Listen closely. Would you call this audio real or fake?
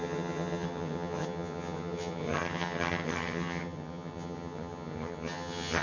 fake